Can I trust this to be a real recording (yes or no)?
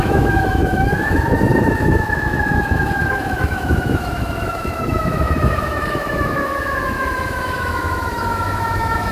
no